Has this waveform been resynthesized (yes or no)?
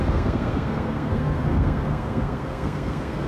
yes